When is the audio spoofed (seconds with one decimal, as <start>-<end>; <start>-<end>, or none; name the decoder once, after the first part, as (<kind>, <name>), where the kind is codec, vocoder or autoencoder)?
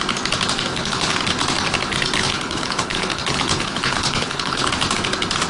0.7-1.2 (codec, HILCodec); 2.2-4.7